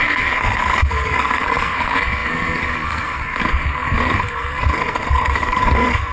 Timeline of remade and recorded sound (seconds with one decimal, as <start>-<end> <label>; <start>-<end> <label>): 0.0-6.1 remade